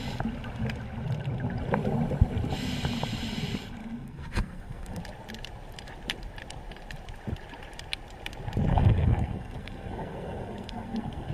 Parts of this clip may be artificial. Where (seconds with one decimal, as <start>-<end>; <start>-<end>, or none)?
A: 3.8-5.0; 8.7-11.3